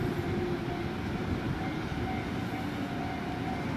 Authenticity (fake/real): real